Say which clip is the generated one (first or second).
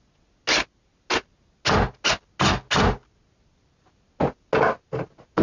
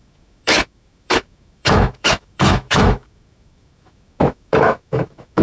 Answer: second